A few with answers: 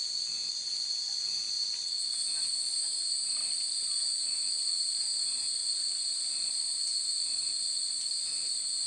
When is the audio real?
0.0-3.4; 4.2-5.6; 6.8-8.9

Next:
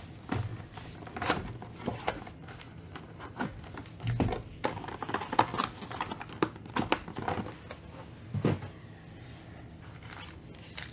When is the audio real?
0.0-0.5; 1.0-10.9

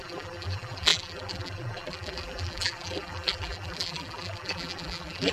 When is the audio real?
none

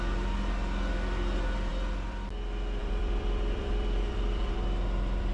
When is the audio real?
0.0-1.7; 2.3-2.8

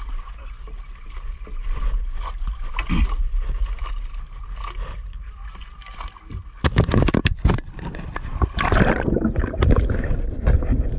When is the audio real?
0.0-11.0

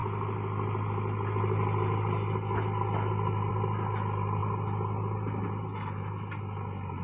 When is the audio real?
0.0-7.0

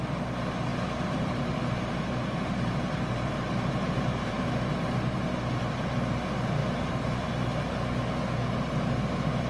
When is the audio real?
0.0-0.7; 4.4-6.6; 7.3-9.5